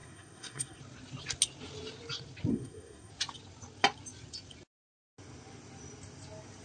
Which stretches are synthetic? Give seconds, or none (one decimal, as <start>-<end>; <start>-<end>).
0.0-0.8; 2.5-3.1